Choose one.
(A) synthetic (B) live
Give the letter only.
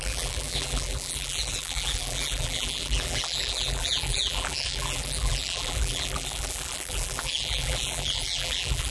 A